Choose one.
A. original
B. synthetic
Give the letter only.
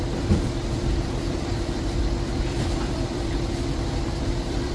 B